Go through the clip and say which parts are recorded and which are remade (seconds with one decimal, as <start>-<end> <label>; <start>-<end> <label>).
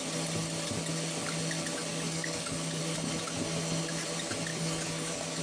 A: 0.0-1.9 recorded; 1.9-2.8 remade; 2.8-4.5 recorded; 4.5-5.4 remade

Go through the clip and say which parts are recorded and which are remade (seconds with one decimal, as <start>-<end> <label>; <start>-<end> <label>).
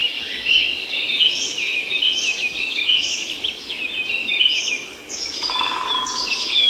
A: 0.0-3.8 remade; 3.8-4.2 recorded; 4.2-6.7 remade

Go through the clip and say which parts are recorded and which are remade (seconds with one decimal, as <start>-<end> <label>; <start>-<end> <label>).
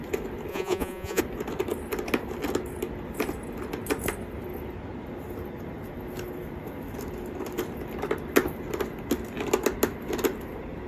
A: 0.0-0.5 recorded; 0.5-1.2 remade; 1.2-10.9 recorded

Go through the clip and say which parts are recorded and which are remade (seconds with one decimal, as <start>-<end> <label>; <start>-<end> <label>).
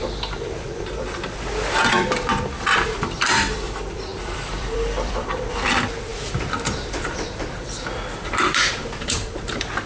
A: 0.0-9.9 remade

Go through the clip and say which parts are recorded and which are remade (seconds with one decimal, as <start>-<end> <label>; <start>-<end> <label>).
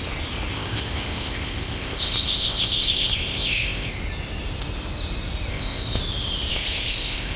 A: 0.0-0.5 recorded; 0.5-3.9 remade; 3.9-5.5 recorded; 5.5-6.0 remade; 6.0-6.5 recorded; 6.5-7.4 remade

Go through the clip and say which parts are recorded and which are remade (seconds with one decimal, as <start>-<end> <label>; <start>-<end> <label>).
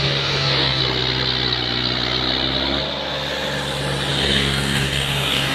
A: 0.0-0.8 remade; 0.8-4.1 recorded; 4.1-5.5 remade